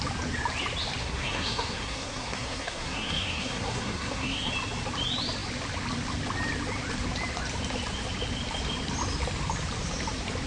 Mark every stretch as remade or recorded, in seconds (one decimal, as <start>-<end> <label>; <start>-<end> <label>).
0.0-1.0 recorded; 1.0-4.5 remade; 4.5-10.5 recorded